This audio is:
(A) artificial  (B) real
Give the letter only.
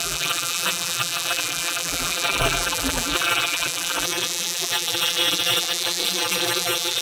A